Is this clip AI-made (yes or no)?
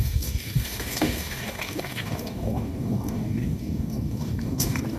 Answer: yes